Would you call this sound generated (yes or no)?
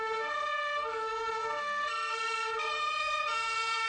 yes